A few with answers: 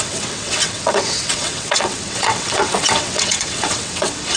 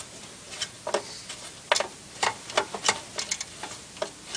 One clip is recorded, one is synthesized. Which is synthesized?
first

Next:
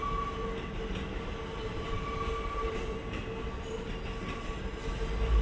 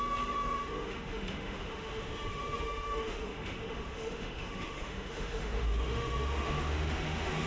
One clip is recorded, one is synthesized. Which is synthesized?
second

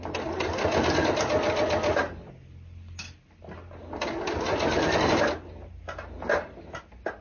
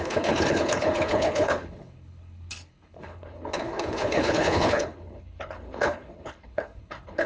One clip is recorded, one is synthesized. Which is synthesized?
second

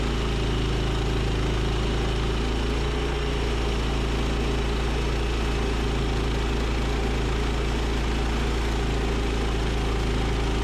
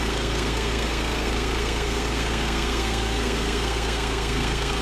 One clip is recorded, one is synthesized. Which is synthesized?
second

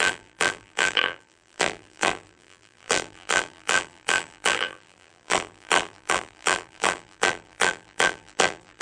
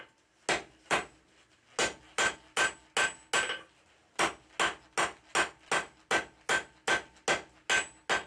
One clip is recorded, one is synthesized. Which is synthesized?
first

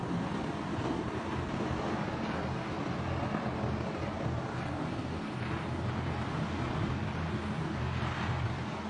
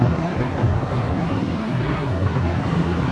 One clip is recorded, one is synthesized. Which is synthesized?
second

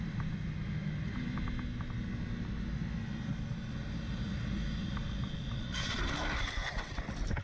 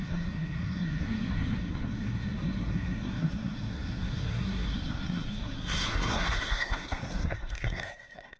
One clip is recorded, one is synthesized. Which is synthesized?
second